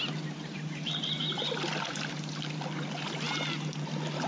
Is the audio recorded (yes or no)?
yes